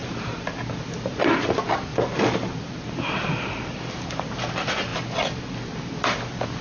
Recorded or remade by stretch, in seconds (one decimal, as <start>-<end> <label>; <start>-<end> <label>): 0.0-6.6 recorded